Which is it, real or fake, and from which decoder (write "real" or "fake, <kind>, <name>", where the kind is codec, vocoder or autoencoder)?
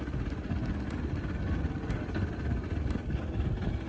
real